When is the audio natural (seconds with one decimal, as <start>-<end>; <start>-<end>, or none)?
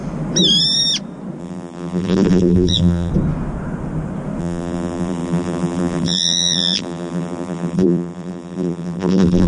0.0-1.4; 3.1-4.4